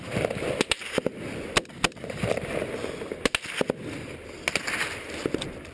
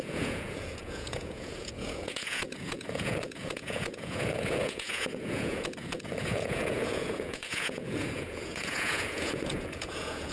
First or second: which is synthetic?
second